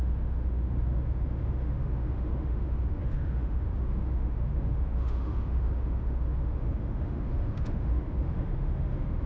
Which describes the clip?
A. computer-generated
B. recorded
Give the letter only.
A